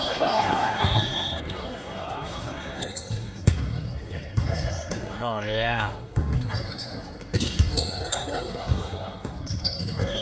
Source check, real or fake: fake